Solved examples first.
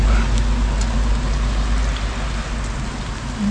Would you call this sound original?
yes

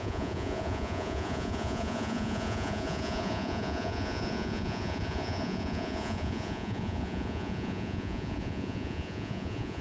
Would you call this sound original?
no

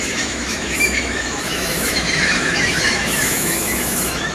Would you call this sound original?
no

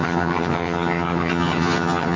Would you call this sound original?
no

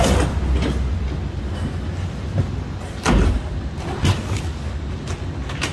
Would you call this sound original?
yes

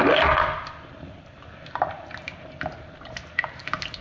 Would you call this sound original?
yes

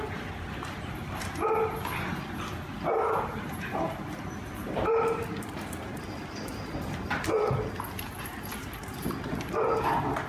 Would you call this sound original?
yes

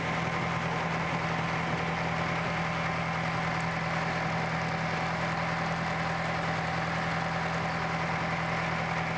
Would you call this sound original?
yes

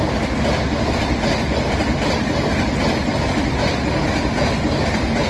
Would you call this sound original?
yes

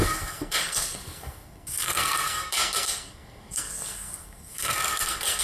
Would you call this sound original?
no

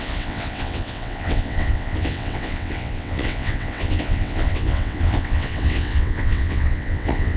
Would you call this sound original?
no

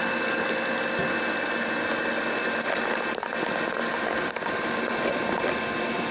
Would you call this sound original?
yes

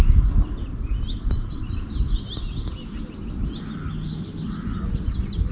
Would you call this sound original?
yes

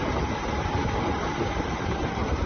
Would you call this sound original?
no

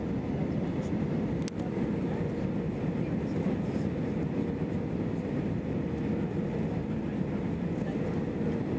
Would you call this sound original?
yes